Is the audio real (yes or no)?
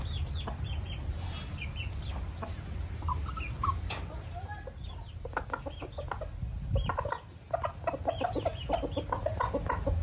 yes